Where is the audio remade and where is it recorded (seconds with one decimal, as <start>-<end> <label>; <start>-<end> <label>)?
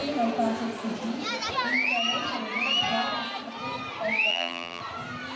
0.0-4.3 recorded; 4.3-4.8 remade; 4.8-5.4 recorded